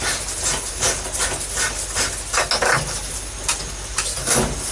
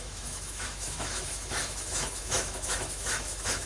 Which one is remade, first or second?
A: second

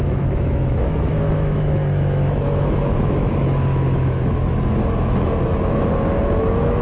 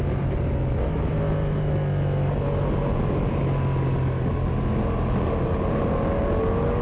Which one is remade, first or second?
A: first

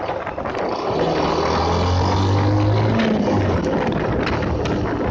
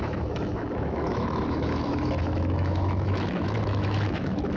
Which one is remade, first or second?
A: second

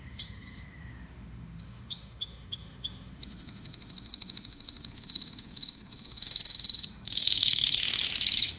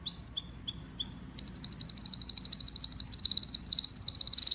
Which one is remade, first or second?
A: first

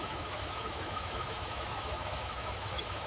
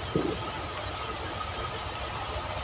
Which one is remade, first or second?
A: first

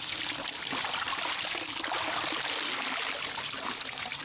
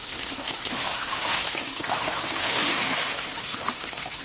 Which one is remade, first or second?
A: second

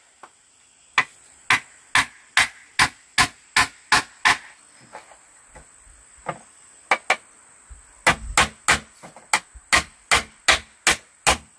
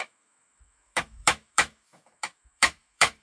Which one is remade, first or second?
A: second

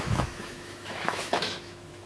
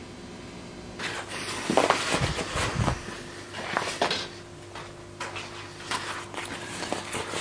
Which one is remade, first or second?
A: first